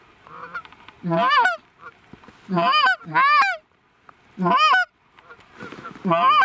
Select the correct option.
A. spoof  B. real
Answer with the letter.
B